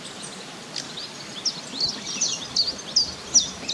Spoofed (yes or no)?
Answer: no